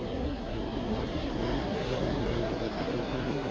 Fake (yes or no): yes